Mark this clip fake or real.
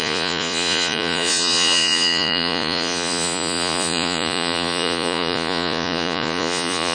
fake